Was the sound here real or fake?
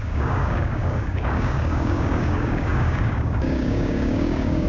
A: fake